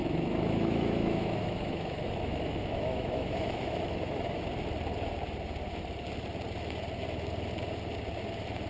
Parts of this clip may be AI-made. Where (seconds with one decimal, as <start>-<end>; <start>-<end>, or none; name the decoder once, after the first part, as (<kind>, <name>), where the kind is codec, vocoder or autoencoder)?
0.0-4.4 (autoencoder, DAC-VAE)